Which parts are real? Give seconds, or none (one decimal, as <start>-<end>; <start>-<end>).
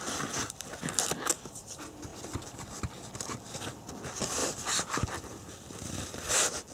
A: 0.0-2.1; 2.9-4.4; 6.3-6.7